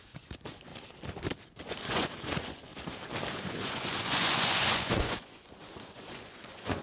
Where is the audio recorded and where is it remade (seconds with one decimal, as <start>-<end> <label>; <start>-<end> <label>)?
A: 0.0-0.7 remade; 0.7-1.7 recorded; 1.7-2.7 remade; 2.7-3.3 recorded; 3.3-6.8 remade